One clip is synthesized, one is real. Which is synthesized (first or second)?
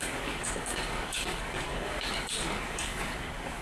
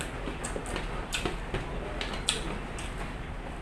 first